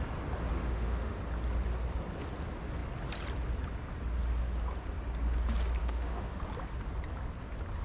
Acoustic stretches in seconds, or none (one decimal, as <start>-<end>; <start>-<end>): 0.0-0.6; 1.2-5.8; 6.4-7.8